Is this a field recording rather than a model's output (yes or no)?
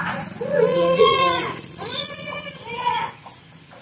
no